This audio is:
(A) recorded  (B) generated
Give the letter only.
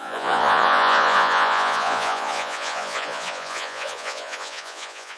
B